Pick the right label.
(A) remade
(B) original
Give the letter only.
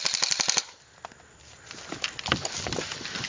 B